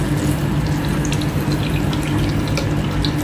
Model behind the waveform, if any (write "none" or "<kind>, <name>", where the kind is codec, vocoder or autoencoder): none